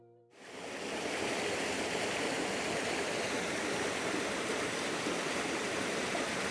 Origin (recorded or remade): remade